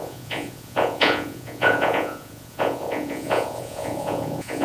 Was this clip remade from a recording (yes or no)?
yes